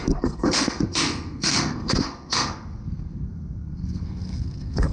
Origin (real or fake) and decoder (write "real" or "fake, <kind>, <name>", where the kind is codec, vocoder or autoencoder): fake, codec, SNAC